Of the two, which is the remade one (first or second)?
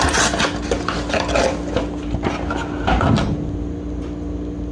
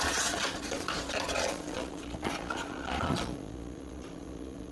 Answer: second